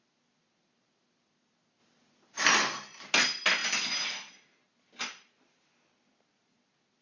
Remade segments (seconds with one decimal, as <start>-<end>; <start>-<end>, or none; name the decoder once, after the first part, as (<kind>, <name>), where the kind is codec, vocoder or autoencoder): none